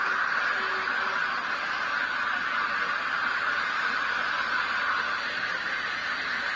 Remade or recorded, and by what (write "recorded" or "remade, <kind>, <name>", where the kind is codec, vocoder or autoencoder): recorded